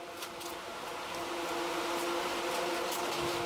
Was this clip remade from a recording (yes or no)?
no